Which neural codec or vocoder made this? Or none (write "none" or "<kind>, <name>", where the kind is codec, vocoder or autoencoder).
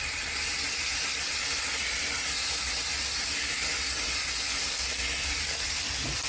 none